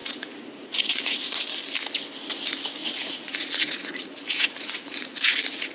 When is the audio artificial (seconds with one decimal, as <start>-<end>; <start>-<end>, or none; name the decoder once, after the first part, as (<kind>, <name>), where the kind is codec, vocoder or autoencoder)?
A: 0.0-1.5 (vocoder, Vocos); 2.8-5.7